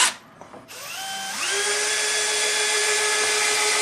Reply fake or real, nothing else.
real